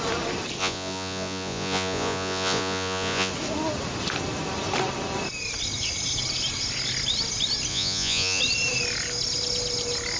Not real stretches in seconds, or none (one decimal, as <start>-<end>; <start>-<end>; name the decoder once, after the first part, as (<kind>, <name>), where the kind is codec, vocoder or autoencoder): 0.6-3.3 (vocoder, Vocos); 7.7-8.4